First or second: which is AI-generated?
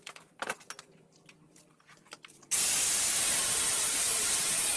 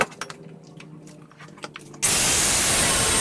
first